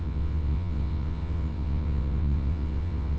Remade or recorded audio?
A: remade